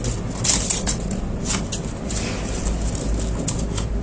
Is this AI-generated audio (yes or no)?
no